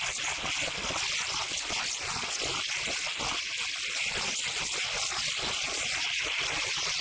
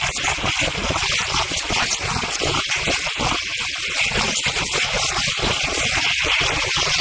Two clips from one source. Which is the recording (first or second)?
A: first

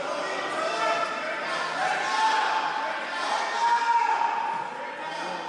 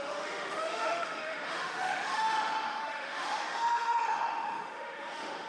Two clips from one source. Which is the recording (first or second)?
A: first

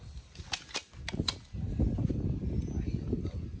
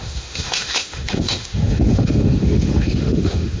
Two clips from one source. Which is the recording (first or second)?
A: first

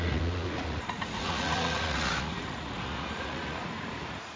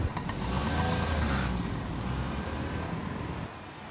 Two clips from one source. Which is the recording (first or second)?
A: second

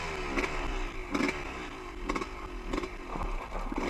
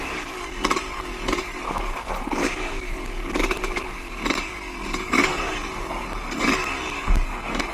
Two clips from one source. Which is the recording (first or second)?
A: first